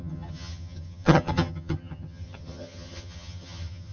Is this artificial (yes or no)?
yes